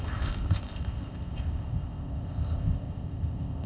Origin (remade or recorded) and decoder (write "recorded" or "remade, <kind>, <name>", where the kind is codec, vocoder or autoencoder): remade, codec, ZipCodec